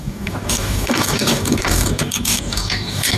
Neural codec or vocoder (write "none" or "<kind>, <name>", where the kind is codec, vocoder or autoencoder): codec, DAC